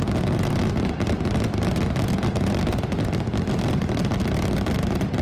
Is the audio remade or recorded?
recorded